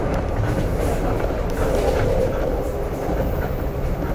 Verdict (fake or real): real